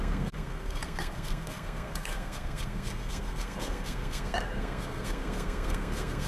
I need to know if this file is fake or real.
fake